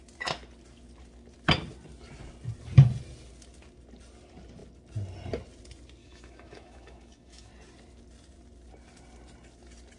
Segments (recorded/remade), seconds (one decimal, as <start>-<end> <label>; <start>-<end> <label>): 0.0-6.0 recorded; 6.0-7.5 remade; 7.5-10.0 recorded